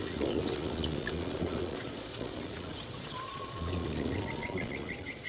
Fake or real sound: fake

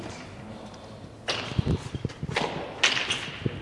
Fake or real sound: real